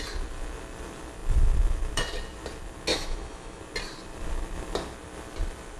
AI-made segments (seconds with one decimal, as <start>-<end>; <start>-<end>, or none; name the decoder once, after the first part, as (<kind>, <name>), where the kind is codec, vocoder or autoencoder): 2.9-3.6 (autoencoder, DAC-VAE)